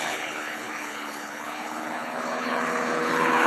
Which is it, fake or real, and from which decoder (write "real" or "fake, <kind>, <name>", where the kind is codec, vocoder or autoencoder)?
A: fake, codec, HILCodec